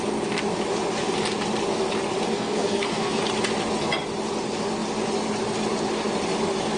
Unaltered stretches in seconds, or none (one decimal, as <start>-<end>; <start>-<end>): 0.0-2.3; 3.2-6.8